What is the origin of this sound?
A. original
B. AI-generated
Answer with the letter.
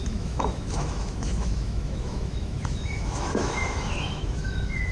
B